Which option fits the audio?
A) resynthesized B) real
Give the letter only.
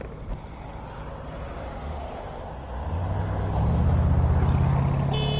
B